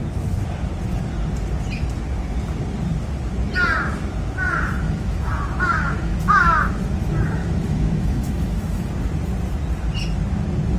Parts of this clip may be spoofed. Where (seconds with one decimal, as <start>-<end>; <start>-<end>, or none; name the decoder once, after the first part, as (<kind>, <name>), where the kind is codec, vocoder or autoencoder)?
4.8-5.3 (autoencoder, DAC-VAE); 5.7-6.7; 7.4-8.9